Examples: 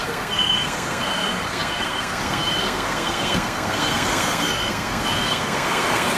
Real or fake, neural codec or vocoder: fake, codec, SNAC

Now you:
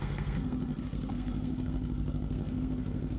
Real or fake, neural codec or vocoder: fake, codec, SNAC